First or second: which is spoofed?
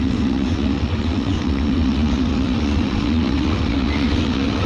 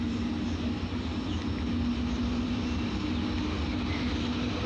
first